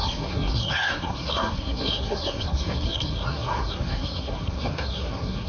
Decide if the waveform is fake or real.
fake